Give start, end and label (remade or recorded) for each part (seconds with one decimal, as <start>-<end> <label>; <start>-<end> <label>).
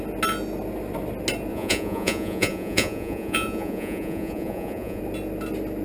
0.0-1.5 recorded; 1.5-5.0 remade; 5.0-5.8 recorded